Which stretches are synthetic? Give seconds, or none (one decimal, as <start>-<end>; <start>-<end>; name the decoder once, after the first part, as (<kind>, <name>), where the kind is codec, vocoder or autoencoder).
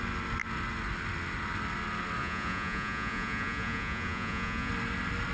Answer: 2.2-4.7 (vocoder, Vocos)